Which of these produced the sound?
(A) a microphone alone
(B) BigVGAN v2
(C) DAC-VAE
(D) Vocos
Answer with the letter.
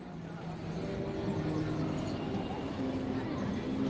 A